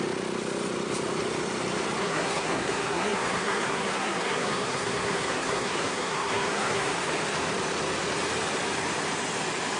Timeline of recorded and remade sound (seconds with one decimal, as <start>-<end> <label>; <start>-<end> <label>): 0.0-2.0 recorded; 2.0-7.1 remade; 7.1-9.8 recorded